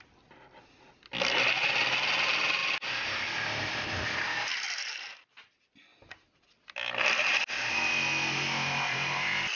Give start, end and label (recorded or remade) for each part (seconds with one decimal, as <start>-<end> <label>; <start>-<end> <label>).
0.0-9.6 recorded